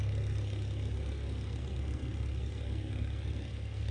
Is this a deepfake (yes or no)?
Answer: yes